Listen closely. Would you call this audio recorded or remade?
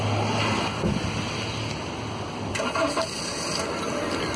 recorded